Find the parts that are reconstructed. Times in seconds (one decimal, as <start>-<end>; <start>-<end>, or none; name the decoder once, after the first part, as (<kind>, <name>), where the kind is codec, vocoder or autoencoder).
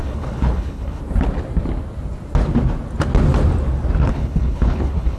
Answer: 0.0-1.0 (codec, HILCodec); 4.1-5.2